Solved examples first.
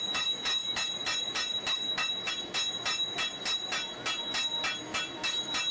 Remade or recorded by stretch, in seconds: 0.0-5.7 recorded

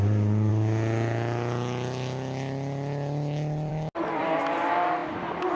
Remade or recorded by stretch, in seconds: 0.0-5.5 recorded